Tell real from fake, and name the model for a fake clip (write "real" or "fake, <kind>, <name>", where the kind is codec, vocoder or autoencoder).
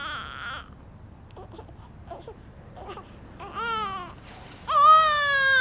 real